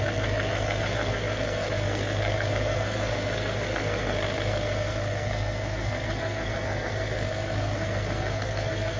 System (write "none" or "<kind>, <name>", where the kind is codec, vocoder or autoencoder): codec, SNAC